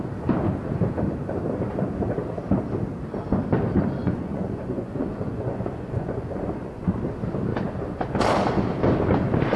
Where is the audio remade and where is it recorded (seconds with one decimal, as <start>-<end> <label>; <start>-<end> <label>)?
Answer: 0.0-4.0 recorded; 4.0-6.8 remade; 6.8-9.6 recorded